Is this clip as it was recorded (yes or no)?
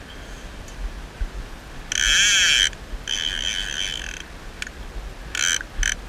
yes